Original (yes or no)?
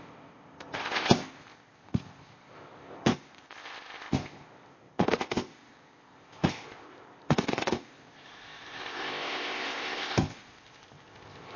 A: no